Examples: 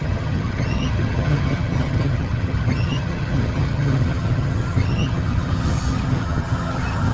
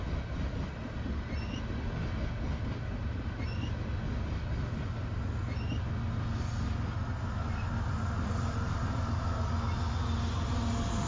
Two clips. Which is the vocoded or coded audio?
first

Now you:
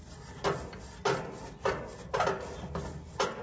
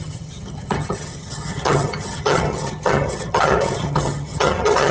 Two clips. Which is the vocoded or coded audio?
second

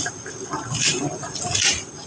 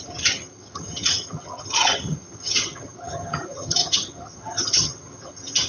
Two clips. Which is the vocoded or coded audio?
second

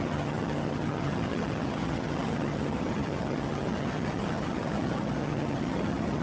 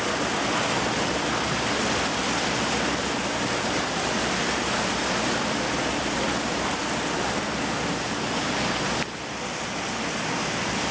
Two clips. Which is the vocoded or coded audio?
first